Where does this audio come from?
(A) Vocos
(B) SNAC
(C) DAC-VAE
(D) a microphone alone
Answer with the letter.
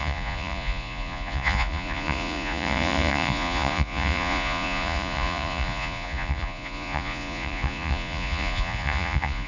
A